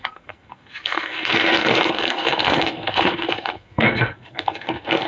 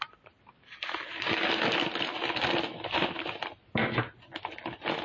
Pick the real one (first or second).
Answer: second